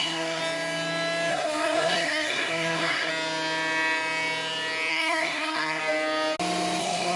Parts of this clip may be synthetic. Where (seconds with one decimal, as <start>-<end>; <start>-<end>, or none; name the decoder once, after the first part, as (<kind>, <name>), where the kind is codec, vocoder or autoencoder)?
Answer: 0.0-0.4 (codec, SNAC); 1.3-3.1; 4.9-5.8; 6.8-7.2